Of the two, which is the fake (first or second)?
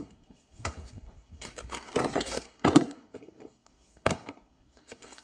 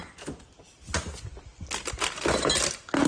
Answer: first